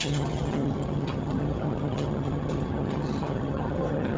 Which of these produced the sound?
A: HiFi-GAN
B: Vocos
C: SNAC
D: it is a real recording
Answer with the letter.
A